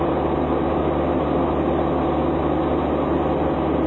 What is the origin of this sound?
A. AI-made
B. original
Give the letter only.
B